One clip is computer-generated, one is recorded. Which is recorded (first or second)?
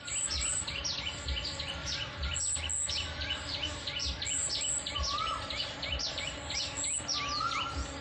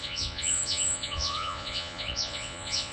first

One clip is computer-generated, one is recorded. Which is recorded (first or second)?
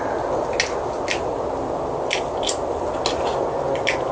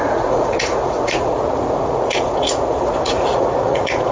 first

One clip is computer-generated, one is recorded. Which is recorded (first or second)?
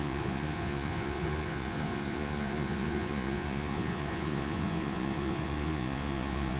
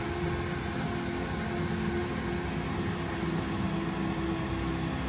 second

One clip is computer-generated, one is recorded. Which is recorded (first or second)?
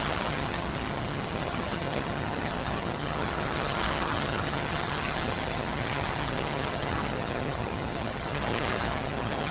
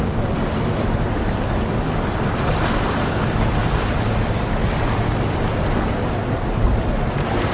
second